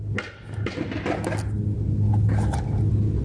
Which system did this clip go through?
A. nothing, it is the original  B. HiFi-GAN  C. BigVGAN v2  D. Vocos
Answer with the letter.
A